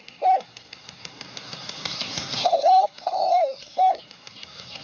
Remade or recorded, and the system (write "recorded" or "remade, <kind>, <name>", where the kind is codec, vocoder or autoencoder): remade, codec, SNAC